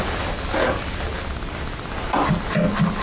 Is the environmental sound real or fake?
real